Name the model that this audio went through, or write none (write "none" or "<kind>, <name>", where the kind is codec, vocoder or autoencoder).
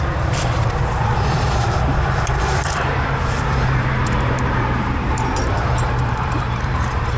vocoder, BigVGAN v2